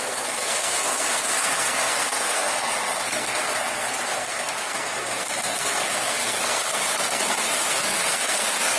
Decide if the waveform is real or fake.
fake